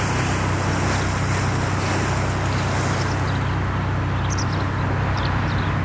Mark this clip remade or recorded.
recorded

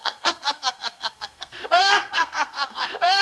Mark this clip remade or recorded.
remade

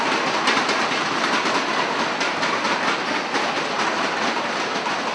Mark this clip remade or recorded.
recorded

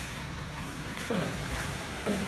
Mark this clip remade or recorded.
remade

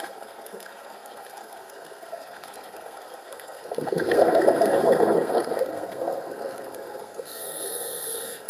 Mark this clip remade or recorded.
remade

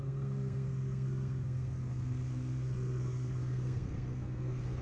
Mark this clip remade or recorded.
remade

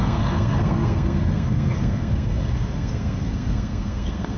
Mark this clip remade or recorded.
remade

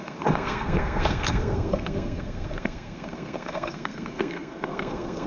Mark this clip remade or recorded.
remade